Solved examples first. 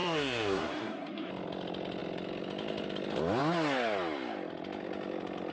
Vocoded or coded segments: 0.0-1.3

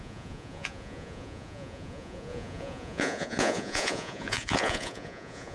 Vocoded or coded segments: 0.0-5.5

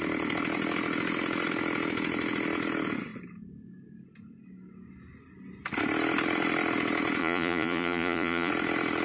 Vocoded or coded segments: 7.2-8.5

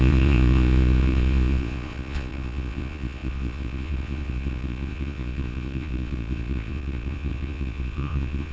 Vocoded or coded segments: 0.0-8.5

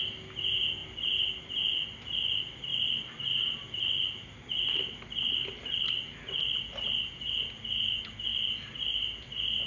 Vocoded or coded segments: 8.3-9.2

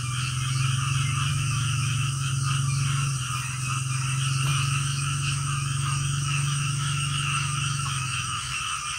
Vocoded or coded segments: 1.3-2.3; 4.5-8.6

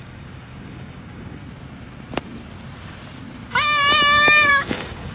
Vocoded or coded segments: 0.0-1.4; 4.5-5.1

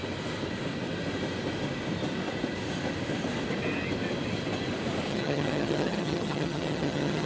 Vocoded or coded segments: 5.1-7.3